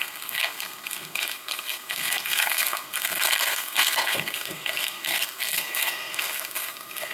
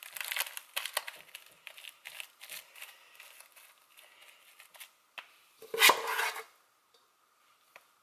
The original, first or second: second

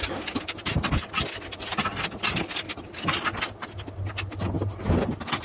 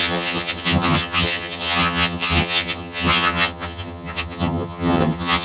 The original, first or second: first